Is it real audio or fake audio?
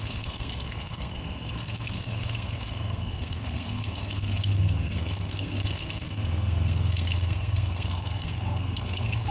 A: fake